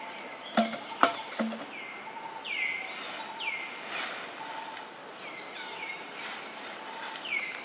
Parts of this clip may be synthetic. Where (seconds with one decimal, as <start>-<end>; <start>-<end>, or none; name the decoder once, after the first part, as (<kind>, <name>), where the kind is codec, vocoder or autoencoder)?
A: 0.0-1.3 (vocoder, BigVGAN v2); 5.1-7.6